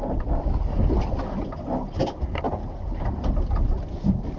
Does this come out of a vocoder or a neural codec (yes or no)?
no